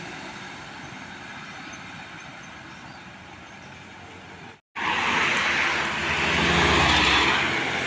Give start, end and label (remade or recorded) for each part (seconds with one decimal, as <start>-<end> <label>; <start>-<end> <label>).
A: 0.0-7.9 recorded